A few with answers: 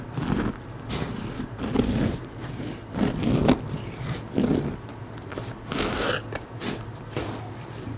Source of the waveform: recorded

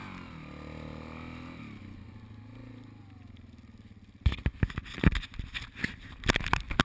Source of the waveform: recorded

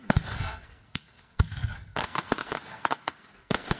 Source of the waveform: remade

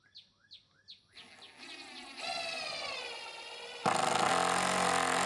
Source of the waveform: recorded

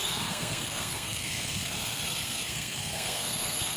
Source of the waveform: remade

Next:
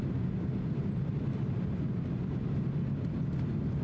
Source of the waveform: recorded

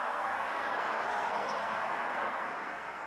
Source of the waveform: remade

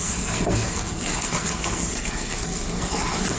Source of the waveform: remade